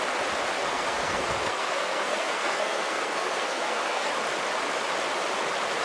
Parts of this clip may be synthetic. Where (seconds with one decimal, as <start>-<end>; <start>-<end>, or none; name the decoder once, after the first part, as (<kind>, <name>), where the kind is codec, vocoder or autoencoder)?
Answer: 0.6-4.1 (codec, SNAC)